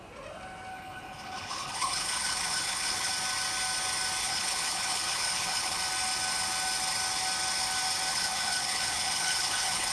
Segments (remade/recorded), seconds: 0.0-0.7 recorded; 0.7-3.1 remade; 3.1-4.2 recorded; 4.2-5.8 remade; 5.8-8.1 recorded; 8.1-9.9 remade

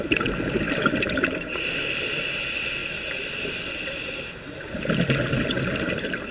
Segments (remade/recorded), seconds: 0.0-6.3 recorded

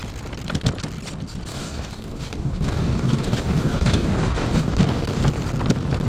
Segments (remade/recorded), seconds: 0.0-1.5 recorded; 1.5-5.2 remade; 5.2-6.1 recorded

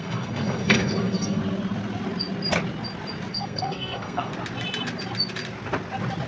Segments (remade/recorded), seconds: 0.0-1.4 remade; 1.4-3.3 recorded; 3.3-4.3 remade; 4.3-6.3 recorded

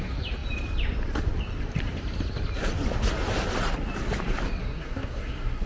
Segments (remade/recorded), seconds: 0.0-4.6 recorded; 4.6-5.7 remade

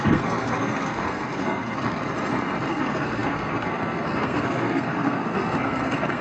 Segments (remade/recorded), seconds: 0.0-2.0 remade; 2.0-2.7 recorded; 2.7-6.2 remade